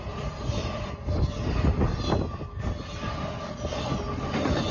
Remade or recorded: recorded